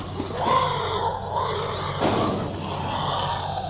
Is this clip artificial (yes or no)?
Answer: no